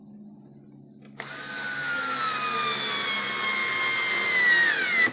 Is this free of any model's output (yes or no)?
yes